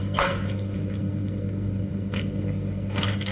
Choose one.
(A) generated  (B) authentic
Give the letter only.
A